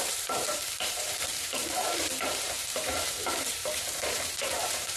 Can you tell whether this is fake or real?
fake